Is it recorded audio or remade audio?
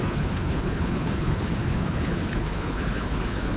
remade